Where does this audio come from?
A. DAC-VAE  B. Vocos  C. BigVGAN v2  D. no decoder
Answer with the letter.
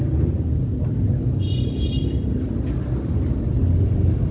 D